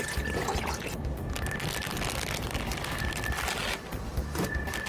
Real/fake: real